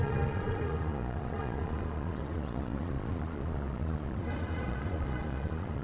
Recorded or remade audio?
remade